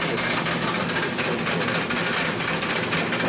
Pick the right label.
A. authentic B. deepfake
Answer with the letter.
A